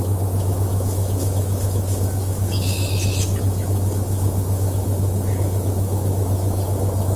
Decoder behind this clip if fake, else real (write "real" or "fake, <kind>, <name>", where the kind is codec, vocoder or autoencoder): fake, autoencoder, DAC-VAE